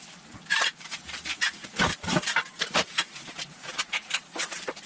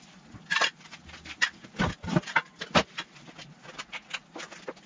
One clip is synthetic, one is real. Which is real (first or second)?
second